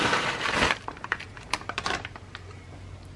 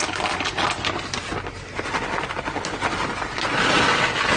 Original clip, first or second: second